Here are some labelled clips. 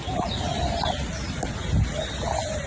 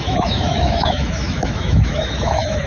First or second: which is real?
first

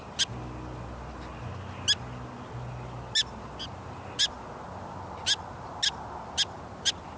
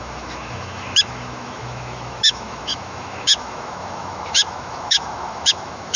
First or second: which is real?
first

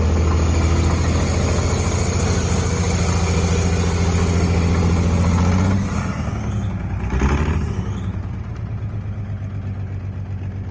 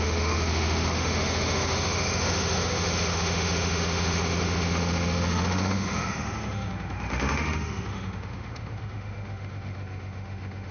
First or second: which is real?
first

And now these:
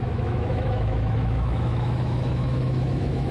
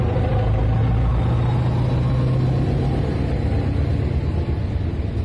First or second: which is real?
second